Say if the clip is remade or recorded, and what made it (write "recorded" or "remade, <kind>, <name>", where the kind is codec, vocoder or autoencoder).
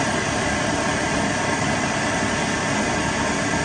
recorded